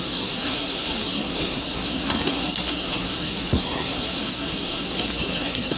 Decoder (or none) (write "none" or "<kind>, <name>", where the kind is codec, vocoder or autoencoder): codec, SNAC